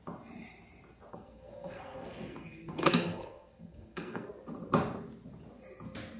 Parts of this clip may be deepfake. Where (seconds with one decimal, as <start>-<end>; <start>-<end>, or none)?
1.1-4.3